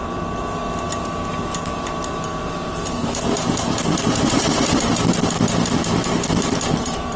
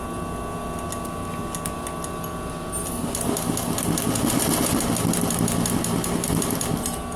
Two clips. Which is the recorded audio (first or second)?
second